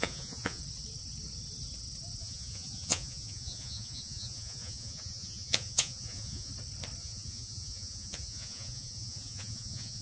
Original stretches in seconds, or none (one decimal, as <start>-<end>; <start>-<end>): 0.6-2.2; 6.5-7.0